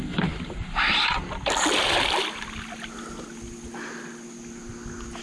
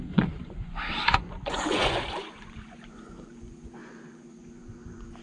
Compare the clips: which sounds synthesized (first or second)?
second